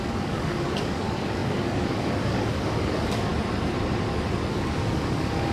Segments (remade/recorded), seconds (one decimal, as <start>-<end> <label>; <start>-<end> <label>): 0.0-3.3 remade; 3.3-4.5 recorded; 4.5-5.5 remade

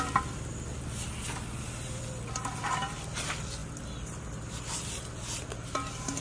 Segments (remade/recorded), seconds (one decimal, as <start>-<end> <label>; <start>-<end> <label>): 0.0-6.2 recorded

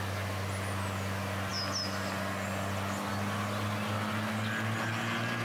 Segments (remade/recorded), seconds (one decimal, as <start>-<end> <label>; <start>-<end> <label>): 0.0-5.4 recorded

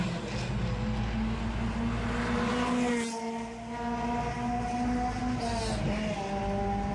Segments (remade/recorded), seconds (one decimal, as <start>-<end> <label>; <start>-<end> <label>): 0.0-6.9 recorded

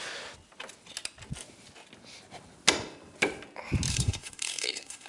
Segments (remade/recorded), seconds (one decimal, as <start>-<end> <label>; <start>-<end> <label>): 0.0-3.9 recorded; 3.9-5.1 remade

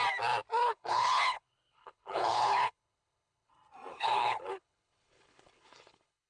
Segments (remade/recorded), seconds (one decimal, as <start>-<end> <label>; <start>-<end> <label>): 0.0-0.6 recorded; 0.6-3.5 remade; 3.5-3.9 recorded; 3.9-6.3 remade

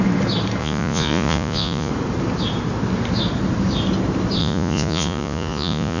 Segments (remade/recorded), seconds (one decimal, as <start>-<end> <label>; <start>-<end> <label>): 0.0-0.6 recorded; 0.6-1.9 remade; 1.9-4.4 recorded; 4.4-6.0 remade